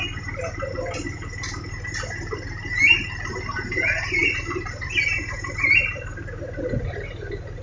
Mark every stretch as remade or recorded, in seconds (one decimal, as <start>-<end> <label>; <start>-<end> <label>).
0.0-7.6 recorded